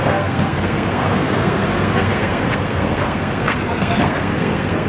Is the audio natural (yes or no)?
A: no